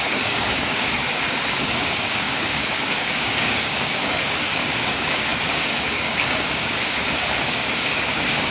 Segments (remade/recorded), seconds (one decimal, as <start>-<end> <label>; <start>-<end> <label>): 0.0-8.5 remade